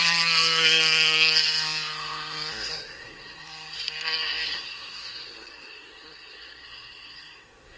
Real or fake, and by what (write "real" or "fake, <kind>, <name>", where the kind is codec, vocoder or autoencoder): fake, codec, SNAC